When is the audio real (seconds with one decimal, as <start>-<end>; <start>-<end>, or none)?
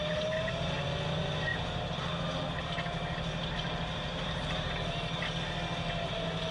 0.0-1.5; 5.4-6.5